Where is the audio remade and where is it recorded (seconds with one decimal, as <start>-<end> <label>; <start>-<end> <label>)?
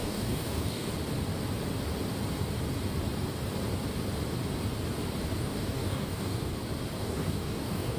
0.0-0.9 remade; 0.9-5.4 recorded; 5.4-6.5 remade; 6.5-7.0 recorded; 7.0-8.0 remade